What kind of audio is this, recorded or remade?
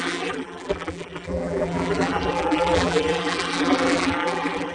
remade